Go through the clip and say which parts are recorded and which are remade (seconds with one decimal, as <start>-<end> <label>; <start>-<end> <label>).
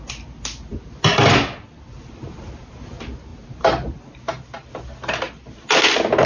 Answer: 0.0-6.3 recorded